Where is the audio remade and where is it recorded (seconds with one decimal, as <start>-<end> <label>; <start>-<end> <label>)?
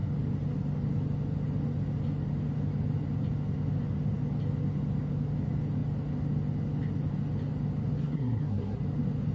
0.0-8.0 recorded; 8.0-8.8 remade; 8.8-9.3 recorded